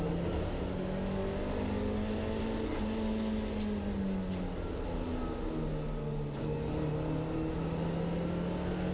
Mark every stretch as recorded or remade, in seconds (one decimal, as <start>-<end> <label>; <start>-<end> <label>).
0.0-8.9 recorded